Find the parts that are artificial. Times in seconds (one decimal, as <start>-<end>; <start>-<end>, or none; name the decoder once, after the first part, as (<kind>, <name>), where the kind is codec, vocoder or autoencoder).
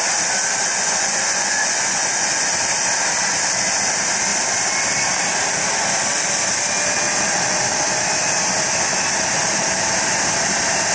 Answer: 0.7-2.5 (vocoder, Vocos)